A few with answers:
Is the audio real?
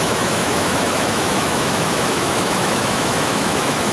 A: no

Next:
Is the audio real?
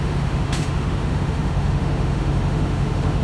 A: no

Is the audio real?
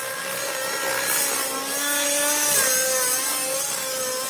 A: yes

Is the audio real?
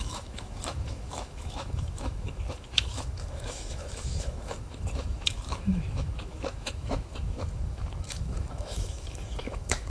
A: no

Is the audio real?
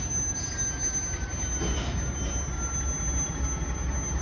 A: yes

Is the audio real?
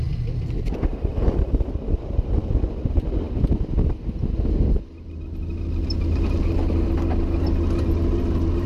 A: yes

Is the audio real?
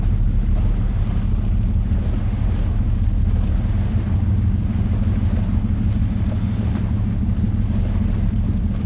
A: yes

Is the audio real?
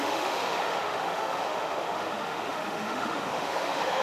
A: no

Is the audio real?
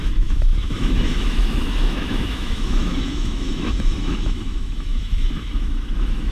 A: no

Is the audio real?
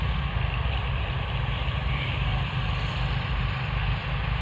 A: yes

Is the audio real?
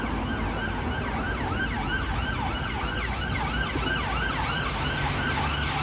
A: yes